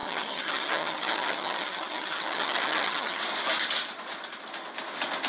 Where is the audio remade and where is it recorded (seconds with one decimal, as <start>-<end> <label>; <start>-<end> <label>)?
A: 0.0-3.2 remade; 3.2-5.3 recorded